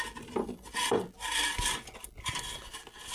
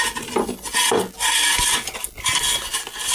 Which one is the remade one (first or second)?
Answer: first